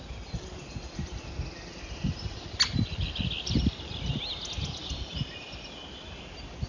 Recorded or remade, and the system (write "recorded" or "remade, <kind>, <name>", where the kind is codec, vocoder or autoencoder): recorded